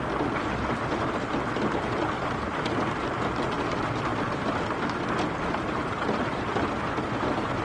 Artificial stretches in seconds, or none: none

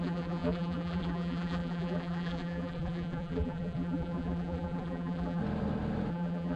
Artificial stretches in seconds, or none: 0.0-5.4; 6.1-6.6

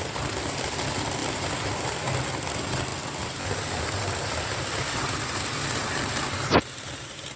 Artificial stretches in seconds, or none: none

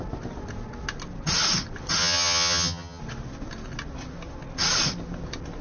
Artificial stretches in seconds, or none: 2.0-3.0

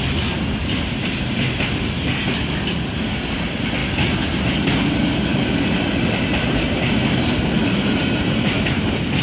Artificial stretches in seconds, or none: none